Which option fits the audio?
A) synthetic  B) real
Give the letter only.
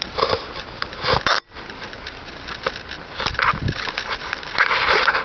B